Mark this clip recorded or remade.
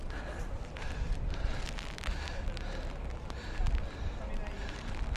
recorded